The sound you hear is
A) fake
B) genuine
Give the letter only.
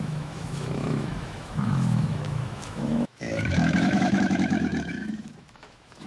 A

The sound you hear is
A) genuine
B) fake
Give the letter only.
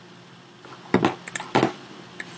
A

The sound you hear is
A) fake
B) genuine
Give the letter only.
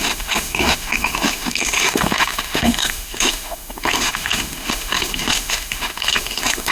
A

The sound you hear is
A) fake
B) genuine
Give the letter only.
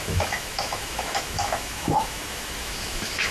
A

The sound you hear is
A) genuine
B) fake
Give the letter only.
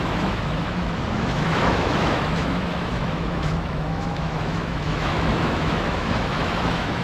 B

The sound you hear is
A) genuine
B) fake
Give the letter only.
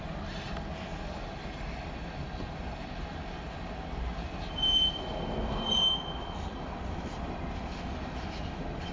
A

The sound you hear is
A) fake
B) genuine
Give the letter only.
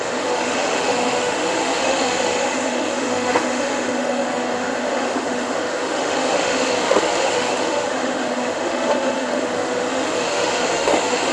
A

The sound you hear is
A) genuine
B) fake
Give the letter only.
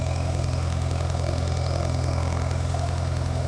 B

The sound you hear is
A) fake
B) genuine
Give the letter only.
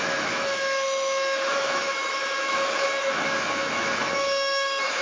A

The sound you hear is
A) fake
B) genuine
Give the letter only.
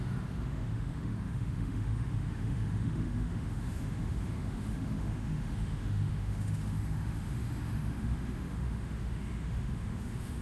A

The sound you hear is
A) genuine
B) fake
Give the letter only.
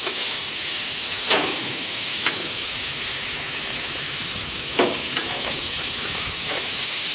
B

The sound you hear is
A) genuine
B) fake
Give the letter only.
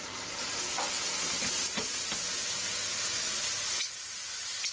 A